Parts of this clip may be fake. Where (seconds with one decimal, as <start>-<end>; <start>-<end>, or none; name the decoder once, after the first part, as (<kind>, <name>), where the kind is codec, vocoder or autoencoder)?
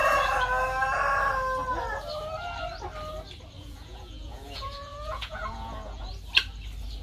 3.6-6.1 (vocoder, Vocos)